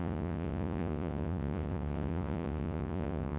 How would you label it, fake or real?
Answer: fake